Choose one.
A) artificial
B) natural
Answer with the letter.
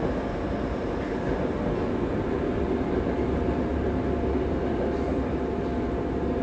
B